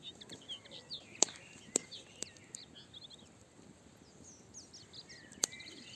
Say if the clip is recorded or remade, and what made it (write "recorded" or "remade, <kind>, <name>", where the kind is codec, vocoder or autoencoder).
recorded